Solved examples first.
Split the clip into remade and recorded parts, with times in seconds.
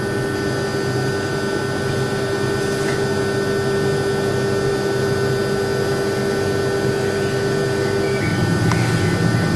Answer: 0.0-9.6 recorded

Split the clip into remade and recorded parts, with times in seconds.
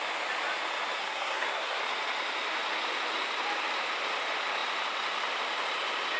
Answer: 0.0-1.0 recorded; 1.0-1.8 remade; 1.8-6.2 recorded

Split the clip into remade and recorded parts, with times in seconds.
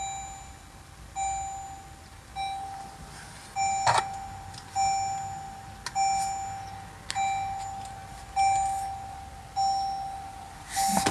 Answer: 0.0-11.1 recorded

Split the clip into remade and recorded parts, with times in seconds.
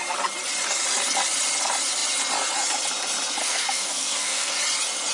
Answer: 0.0-3.4 recorded; 3.4-4.5 remade; 4.5-5.1 recorded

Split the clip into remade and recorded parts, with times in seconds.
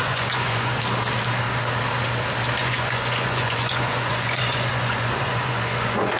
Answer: 0.0-0.7 remade; 0.7-2.6 recorded; 2.6-6.2 remade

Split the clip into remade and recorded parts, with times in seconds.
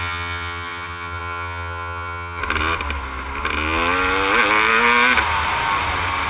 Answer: 0.0-2.4 remade; 2.4-6.3 recorded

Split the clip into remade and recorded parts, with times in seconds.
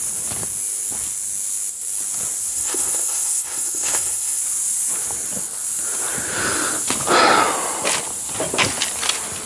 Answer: 0.0-2.5 recorded; 2.5-4.4 remade; 4.4-9.5 recorded